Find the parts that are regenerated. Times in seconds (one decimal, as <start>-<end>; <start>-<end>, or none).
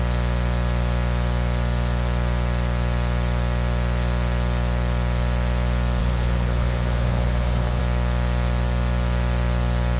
6.0-7.8